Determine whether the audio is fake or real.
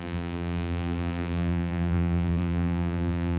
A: fake